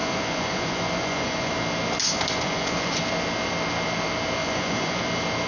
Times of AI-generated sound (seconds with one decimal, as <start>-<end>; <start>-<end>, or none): 0.0-1.5; 2.0-3.0; 4.4-5.0